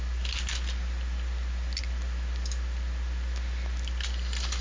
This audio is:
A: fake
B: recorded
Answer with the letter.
B